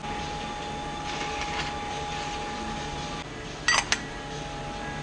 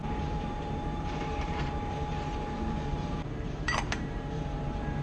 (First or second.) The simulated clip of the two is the second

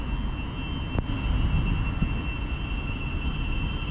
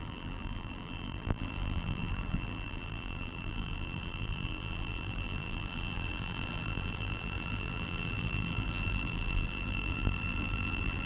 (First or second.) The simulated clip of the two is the second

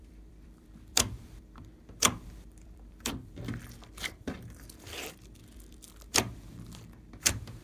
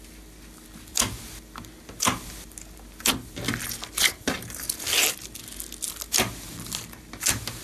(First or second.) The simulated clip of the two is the first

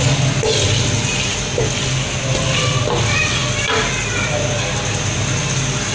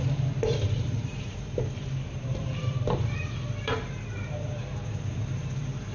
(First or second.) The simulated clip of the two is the second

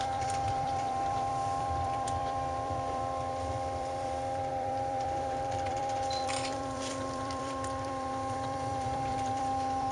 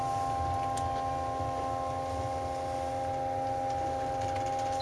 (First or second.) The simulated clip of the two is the first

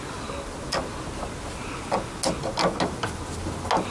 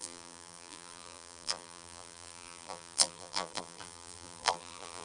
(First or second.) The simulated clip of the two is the second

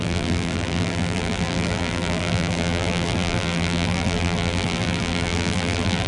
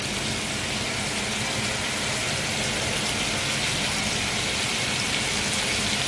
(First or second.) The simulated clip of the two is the first